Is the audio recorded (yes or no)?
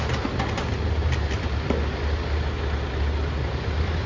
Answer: yes